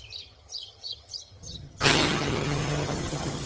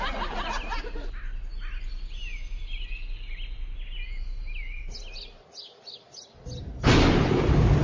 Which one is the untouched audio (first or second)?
second